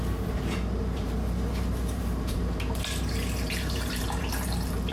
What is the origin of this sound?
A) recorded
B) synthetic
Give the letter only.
B